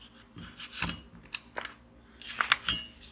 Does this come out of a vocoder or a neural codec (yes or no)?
no